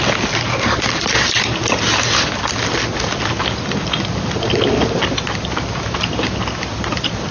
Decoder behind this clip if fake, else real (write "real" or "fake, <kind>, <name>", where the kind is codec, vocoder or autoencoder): real